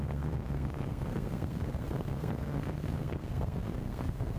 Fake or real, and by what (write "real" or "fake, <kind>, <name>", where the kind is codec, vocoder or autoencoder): fake, codec, SNAC